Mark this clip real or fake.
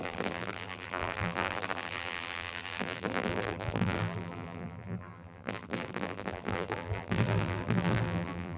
fake